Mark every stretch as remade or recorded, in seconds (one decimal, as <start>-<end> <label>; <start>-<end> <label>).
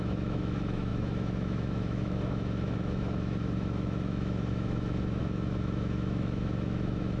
0.0-7.2 remade